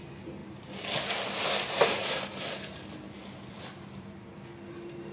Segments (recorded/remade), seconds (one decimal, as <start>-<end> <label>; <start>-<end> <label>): 0.0-5.1 recorded